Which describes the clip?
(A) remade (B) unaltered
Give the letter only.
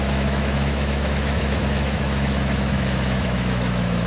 A